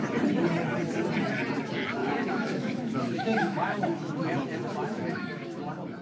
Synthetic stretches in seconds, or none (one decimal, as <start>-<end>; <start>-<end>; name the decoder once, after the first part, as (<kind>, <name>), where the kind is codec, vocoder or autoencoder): 2.0-5.6 (autoencoder, DAC-VAE)